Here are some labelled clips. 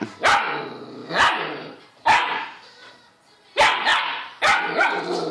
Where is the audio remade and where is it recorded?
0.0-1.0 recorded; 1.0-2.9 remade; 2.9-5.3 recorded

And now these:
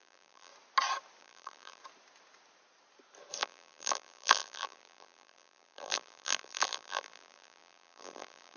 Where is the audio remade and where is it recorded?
0.0-0.5 remade; 0.5-1.2 recorded; 1.2-1.8 remade; 1.8-3.4 recorded; 3.4-8.6 remade